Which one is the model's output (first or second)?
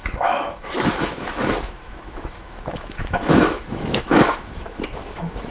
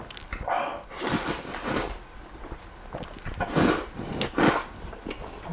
first